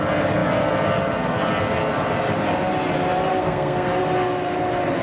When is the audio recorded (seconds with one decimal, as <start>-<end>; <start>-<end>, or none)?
0.0-3.3; 4.0-5.0